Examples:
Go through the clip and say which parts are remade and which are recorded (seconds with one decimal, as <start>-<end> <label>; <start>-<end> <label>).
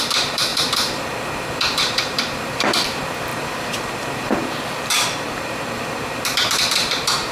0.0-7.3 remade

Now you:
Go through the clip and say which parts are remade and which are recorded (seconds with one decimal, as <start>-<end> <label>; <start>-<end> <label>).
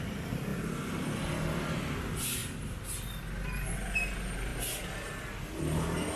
0.0-6.2 recorded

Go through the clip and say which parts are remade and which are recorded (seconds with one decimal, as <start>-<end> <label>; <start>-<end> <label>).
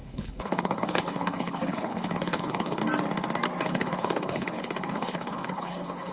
0.0-2.8 remade; 2.8-3.7 recorded; 3.7-6.1 remade